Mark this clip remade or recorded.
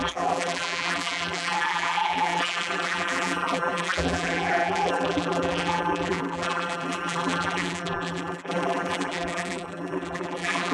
remade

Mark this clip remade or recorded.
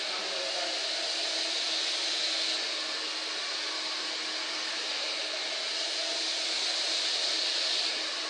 recorded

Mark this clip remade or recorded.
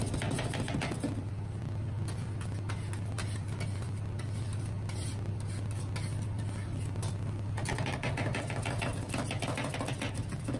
remade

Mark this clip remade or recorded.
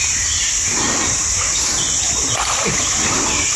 remade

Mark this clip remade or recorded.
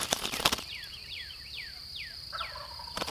remade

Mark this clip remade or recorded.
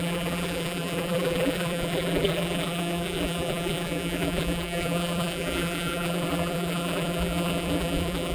remade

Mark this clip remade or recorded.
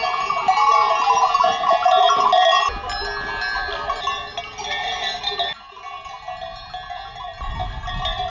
recorded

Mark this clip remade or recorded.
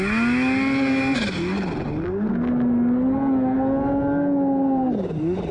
recorded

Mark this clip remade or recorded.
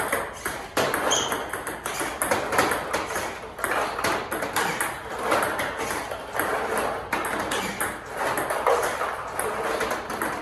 recorded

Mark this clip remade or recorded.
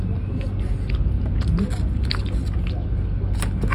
recorded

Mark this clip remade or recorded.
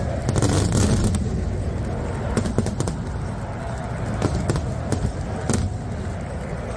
recorded